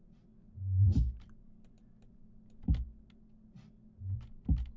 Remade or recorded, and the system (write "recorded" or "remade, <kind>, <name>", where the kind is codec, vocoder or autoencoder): recorded